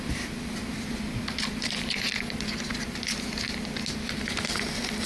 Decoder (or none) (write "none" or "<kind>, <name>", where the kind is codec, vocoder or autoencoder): none